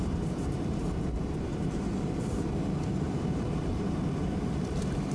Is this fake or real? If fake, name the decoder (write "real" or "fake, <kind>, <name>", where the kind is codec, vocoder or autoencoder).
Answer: fake, vocoder, BigVGAN v2